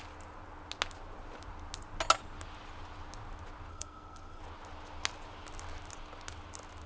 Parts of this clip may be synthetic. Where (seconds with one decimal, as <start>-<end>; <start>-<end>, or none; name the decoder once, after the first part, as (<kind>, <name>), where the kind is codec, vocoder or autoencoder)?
3.7-4.4 (codec, SNAC)